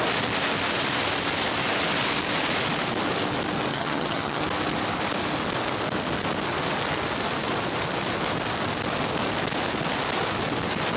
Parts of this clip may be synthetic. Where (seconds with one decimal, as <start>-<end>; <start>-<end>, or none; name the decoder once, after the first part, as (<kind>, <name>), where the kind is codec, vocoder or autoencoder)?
3.7-4.4 (vocoder, HiFi-GAN)